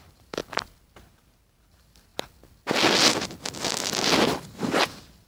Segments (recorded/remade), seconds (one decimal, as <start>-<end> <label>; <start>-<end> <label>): 0.0-0.4 remade; 0.4-1.1 recorded; 1.1-2.1 remade; 2.1-4.6 recorded; 4.6-5.3 remade